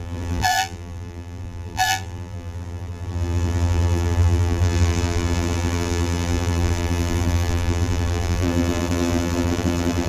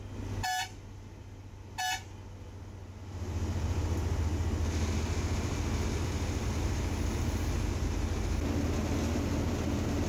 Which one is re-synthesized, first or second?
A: first